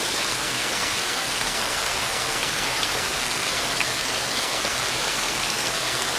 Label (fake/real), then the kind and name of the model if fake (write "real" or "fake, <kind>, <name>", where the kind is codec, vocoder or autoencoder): fake, codec, SNAC